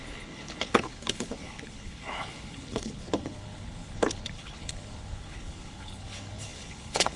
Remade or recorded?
remade